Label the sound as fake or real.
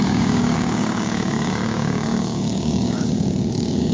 fake